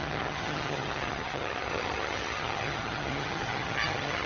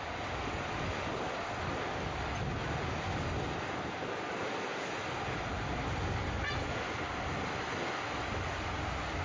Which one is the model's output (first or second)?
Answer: first